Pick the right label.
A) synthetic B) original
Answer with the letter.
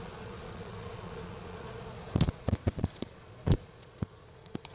A